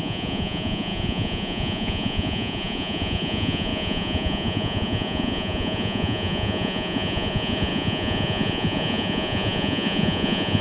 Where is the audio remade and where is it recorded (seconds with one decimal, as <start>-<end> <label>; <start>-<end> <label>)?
0.0-10.6 remade